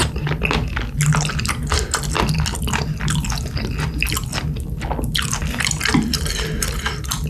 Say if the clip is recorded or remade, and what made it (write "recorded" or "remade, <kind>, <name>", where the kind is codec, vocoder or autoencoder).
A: recorded